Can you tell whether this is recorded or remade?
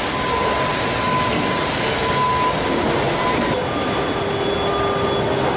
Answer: recorded